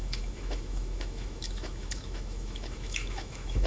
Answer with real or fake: fake